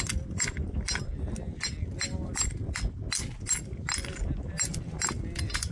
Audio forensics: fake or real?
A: real